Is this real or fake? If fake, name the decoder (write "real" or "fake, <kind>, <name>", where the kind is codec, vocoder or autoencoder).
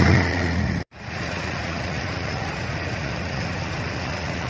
fake, vocoder, Vocos